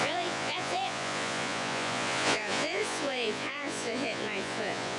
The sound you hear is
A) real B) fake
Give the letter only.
B